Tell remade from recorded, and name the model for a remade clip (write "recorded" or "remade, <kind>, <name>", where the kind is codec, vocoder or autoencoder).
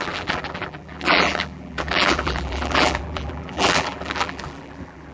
remade, vocoder, BigVGAN v2